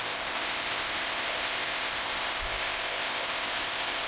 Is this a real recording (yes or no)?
no